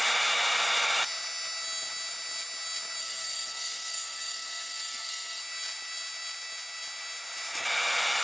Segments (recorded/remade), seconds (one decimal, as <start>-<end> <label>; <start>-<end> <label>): 0.0-3.0 recorded; 3.0-5.4 remade; 5.4-8.2 recorded